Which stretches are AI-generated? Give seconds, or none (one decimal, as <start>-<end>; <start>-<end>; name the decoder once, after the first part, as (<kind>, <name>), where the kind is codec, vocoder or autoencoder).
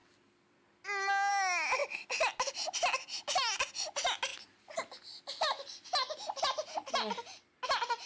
none